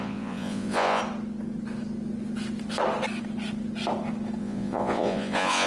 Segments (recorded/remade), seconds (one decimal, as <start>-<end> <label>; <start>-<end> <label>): 0.0-1.0 remade; 1.0-4.4 recorded; 4.4-5.7 remade